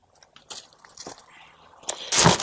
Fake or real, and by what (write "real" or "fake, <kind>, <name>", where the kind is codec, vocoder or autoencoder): real